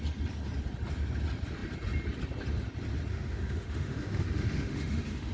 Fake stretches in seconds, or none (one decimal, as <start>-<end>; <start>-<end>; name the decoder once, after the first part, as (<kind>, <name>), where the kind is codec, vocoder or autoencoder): 3.1-5.3 (autoencoder, DAC-VAE)